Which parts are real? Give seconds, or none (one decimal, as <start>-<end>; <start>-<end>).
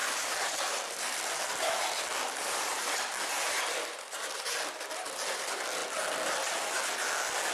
4.5-7.5